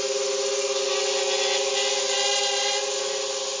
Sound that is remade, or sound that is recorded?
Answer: recorded